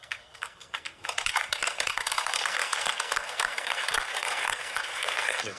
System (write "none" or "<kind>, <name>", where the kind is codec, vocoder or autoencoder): codec, SNAC